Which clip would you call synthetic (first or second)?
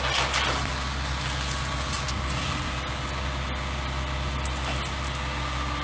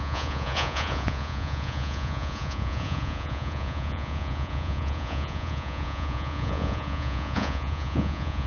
second